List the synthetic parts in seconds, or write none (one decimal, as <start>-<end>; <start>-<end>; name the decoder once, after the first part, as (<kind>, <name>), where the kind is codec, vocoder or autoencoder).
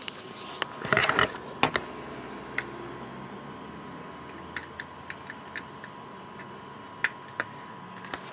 4.6-7.7 (vocoder, BigVGAN v2)